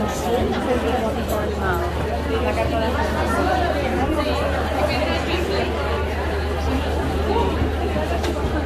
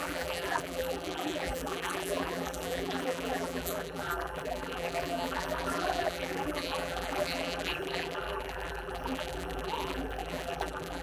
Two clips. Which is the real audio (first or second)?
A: first